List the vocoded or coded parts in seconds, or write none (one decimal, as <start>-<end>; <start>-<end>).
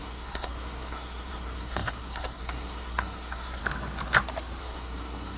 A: 0.0-3.6; 4.6-5.4